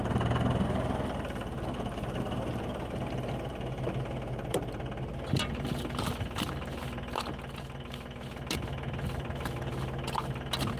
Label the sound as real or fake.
real